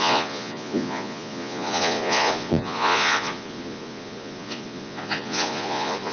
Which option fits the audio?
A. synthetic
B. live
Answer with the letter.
A